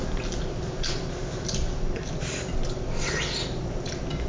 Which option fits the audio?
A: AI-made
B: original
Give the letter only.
B